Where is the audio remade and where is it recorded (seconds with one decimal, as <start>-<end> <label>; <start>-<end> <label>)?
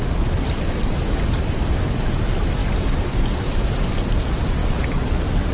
0.0-5.5 recorded